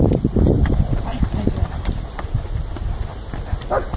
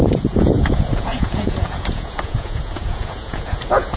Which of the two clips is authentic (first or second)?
first